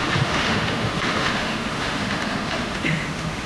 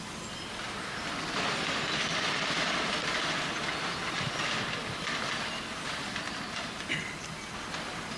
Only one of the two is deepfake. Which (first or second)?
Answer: first